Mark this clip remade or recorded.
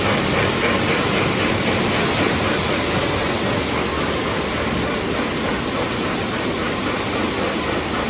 recorded